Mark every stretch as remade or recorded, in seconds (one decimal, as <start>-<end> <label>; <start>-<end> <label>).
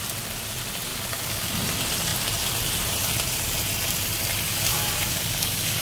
0.0-0.9 recorded; 0.9-1.5 remade; 1.5-4.7 recorded; 4.7-5.8 remade